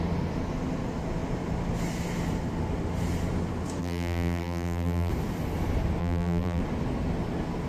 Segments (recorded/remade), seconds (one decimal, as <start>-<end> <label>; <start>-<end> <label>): 0.0-3.8 recorded; 3.8-5.1 remade; 5.1-6.0 recorded; 6.0-6.6 remade; 6.6-7.7 recorded